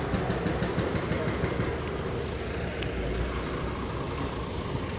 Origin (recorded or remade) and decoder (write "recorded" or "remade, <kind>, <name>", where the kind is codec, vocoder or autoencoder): recorded